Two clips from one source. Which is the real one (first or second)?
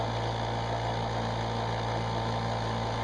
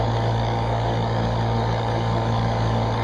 first